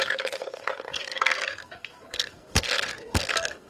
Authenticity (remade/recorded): remade